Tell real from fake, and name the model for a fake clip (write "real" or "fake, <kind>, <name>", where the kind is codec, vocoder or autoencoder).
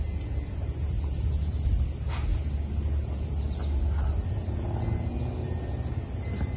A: real